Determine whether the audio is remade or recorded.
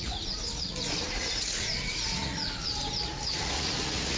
remade